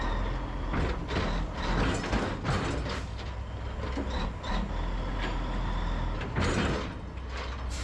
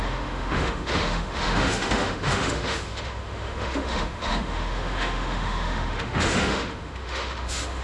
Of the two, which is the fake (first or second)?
second